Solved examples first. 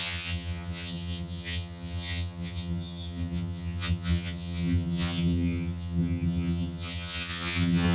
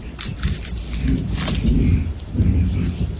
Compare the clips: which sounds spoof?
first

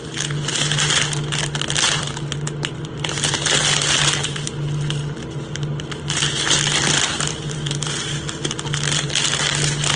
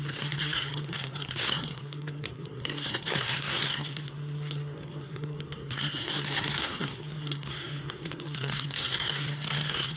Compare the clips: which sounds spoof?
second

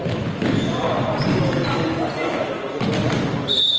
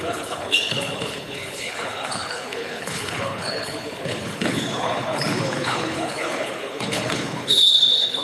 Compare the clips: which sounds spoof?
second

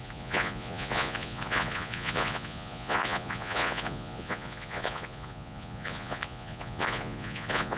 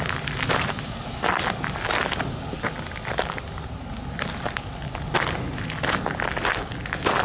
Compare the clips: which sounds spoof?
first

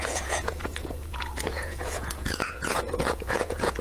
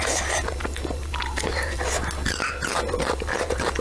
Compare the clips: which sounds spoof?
first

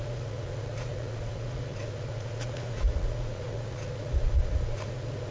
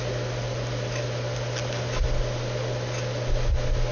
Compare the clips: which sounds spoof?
first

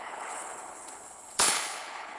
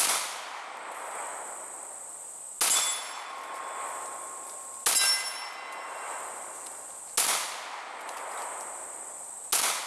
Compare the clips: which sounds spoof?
first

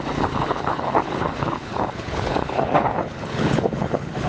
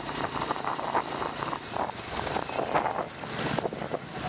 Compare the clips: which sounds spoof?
first